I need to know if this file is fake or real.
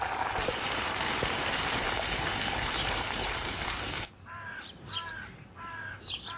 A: fake